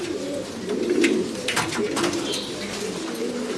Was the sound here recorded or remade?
recorded